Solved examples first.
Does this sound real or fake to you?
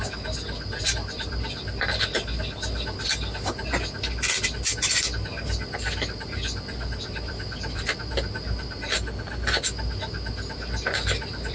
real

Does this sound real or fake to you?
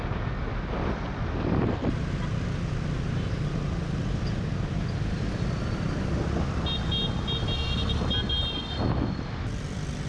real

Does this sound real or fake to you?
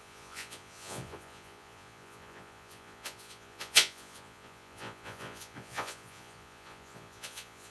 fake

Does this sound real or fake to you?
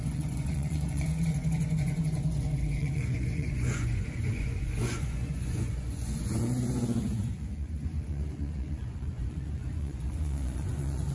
fake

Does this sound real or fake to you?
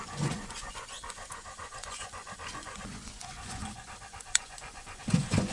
fake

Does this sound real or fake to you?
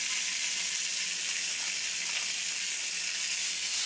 real